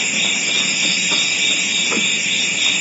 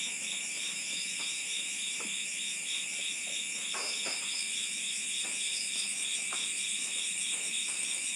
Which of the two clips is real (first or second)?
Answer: first